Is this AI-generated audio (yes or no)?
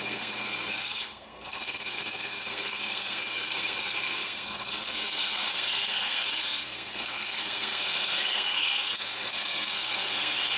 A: yes